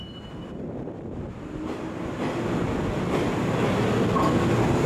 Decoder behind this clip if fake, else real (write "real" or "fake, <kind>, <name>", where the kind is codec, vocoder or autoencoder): real